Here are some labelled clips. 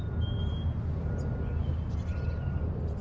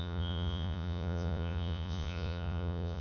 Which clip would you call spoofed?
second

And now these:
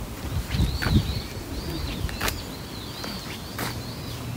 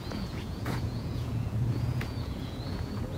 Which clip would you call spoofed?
second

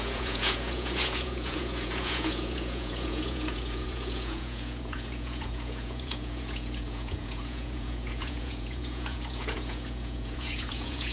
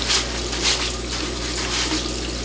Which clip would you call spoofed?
first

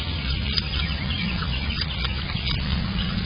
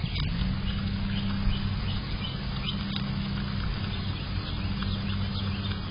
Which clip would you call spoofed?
first